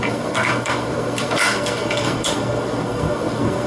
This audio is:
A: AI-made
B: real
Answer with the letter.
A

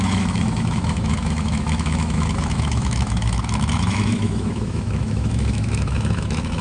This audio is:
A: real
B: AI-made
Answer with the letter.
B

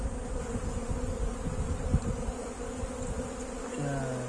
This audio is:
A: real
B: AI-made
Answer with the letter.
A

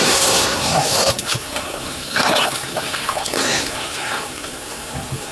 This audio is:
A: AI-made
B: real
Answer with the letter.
A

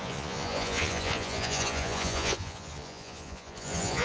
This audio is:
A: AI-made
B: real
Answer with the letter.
A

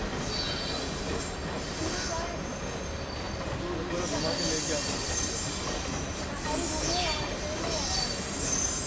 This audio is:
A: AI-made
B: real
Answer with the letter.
B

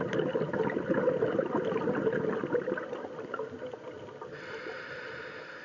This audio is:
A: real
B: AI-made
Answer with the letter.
A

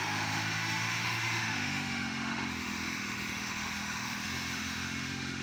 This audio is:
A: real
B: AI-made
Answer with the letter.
B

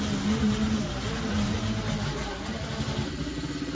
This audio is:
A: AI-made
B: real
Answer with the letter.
B